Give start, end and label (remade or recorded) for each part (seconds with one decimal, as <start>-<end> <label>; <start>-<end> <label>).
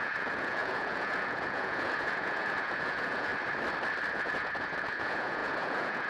0.0-3.3 remade; 3.3-4.1 recorded; 4.1-6.1 remade